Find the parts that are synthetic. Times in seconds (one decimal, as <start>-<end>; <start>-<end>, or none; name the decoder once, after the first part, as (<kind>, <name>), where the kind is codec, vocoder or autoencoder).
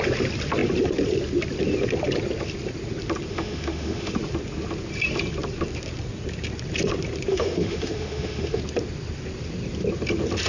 3.3-4.1 (autoencoder, DAC-VAE); 7.3-8.6